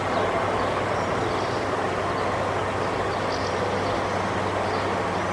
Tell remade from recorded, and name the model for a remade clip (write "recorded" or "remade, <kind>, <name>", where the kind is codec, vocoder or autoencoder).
recorded